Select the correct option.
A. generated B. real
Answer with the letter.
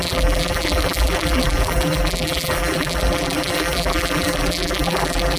A